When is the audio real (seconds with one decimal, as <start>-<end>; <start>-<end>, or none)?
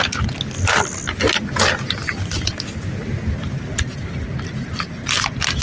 0.0-5.6